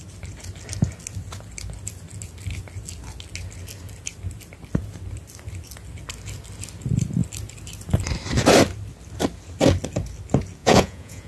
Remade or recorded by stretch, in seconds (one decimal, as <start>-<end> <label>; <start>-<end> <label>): 0.0-10.6 recorded; 10.6-11.3 remade